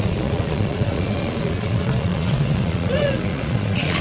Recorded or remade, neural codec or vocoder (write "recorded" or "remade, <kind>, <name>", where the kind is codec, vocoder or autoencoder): remade, vocoder, Vocos